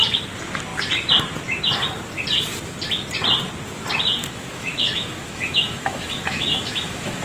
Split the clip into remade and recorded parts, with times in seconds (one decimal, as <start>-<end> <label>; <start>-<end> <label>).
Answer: 0.0-4.2 recorded; 4.2-7.2 remade